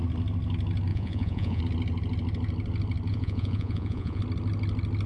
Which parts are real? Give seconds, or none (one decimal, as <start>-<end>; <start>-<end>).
0.0-0.9; 1.6-3.1; 4.2-5.1